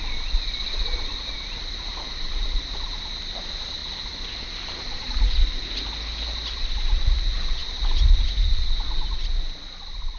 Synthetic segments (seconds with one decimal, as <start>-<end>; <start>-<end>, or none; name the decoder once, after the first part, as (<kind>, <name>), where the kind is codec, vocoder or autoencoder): none